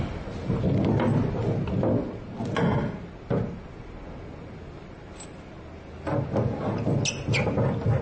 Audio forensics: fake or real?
real